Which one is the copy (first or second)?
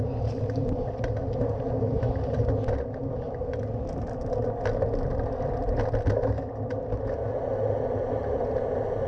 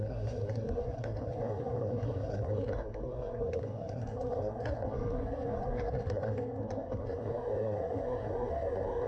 second